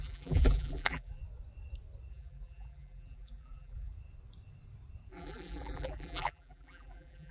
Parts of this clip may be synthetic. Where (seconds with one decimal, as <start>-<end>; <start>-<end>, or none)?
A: 0.0-1.2; 2.1-3.9; 5.1-7.3